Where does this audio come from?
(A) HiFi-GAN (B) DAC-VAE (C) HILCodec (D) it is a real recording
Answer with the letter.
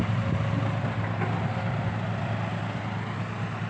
D